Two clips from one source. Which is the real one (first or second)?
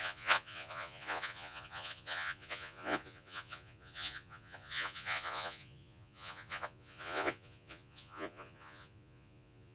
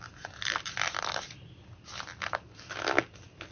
second